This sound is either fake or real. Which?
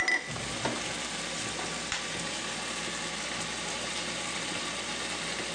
real